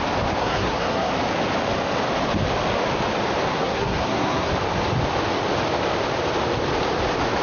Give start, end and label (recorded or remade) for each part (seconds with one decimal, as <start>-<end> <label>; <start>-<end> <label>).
0.0-0.4 recorded; 0.4-1.1 remade; 1.1-3.5 recorded; 3.5-4.5 remade; 4.5-7.4 recorded